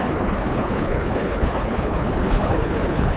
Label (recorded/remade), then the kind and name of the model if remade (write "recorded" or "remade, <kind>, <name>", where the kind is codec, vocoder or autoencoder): remade, codec, HILCodec